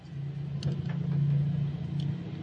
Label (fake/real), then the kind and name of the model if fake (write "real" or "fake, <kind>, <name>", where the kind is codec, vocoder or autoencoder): real